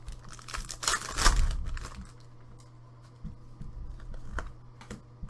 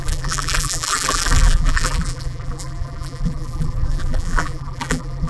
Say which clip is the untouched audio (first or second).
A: first